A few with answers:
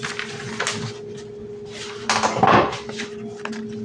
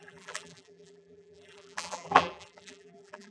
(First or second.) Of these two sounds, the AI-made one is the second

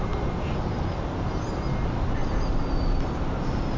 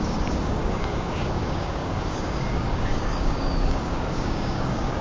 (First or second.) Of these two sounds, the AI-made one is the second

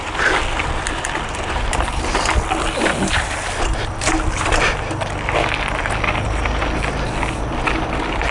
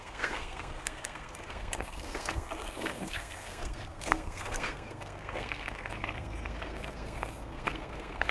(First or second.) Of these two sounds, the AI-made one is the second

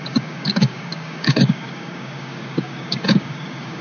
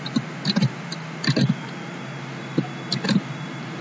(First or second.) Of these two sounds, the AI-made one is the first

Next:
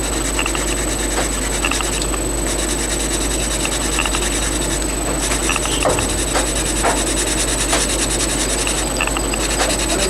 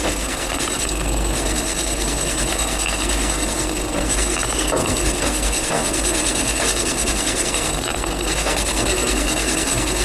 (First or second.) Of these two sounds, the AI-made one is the second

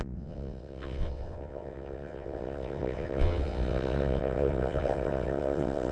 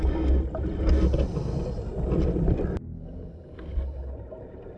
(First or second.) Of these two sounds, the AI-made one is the first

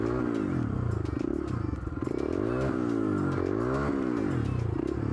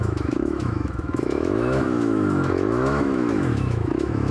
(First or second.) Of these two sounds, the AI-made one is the second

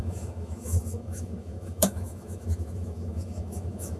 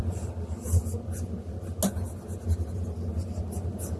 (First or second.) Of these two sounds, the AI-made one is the first